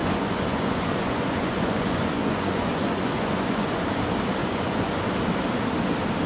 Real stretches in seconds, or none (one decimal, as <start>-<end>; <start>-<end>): 3.8-4.4; 5.0-6.3